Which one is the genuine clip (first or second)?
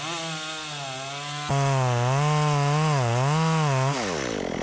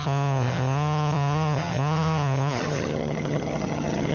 first